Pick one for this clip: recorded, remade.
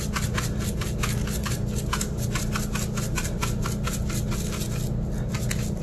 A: recorded